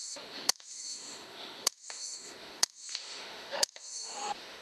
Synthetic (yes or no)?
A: yes